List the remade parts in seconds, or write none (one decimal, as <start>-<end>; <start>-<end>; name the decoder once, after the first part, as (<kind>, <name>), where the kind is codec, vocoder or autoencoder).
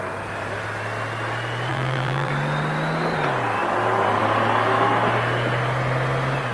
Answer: 1.7-2.3 (vocoder, BigVGAN v2)